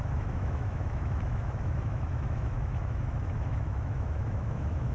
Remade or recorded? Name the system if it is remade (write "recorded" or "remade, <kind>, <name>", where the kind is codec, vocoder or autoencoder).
remade, autoencoder, DAC-VAE